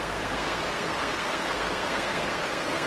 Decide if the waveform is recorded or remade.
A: remade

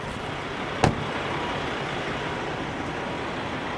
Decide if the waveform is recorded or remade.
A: recorded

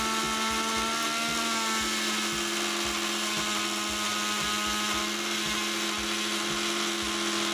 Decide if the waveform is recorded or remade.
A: recorded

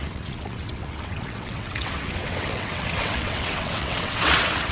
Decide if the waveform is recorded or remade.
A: remade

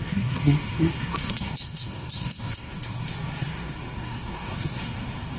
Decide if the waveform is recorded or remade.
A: remade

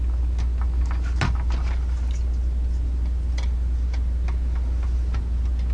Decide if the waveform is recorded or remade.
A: recorded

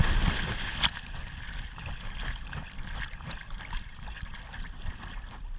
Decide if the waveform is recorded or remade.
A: recorded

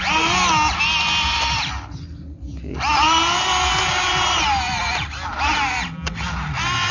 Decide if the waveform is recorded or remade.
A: recorded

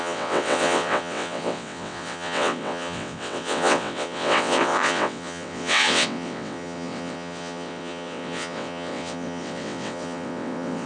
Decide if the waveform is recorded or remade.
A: remade